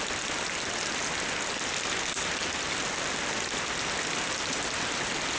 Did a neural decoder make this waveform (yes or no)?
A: no